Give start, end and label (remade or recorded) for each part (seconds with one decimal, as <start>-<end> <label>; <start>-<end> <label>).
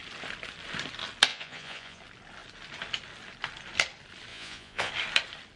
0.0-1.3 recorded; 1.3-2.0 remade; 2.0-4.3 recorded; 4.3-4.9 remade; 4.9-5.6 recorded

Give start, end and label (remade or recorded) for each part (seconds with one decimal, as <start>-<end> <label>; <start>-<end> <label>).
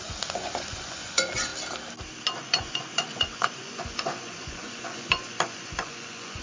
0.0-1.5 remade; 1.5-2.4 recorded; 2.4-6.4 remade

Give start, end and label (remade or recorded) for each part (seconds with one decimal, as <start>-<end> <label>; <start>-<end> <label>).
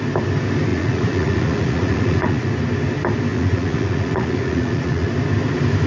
0.0-0.7 recorded; 0.7-2.5 remade; 2.5-3.3 recorded; 3.3-5.1 remade; 5.1-5.9 recorded